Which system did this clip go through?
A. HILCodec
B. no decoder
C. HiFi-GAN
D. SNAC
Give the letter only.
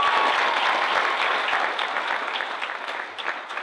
B